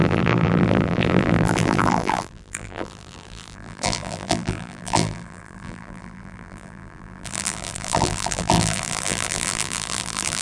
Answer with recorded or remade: remade